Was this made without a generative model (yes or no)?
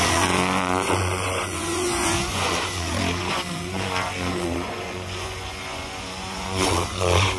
no